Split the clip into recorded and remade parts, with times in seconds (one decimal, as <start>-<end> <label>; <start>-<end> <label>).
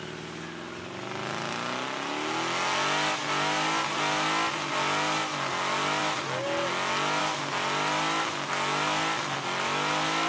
0.0-10.3 recorded